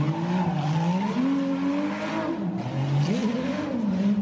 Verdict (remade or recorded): recorded